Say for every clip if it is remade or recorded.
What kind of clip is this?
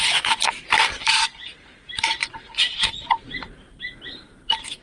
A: remade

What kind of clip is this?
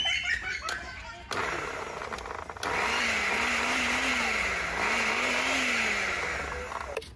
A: recorded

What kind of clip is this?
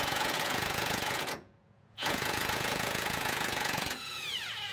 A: remade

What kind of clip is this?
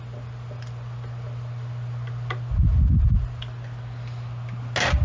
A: recorded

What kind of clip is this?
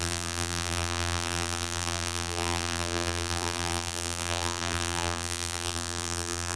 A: remade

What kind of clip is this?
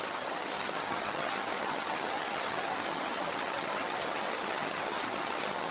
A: remade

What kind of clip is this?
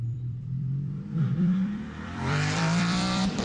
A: remade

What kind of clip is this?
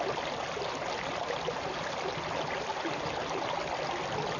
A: recorded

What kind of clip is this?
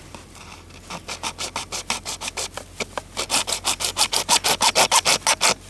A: recorded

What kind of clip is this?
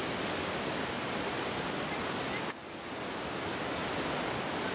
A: recorded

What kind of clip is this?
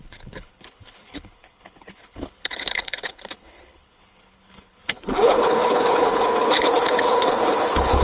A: remade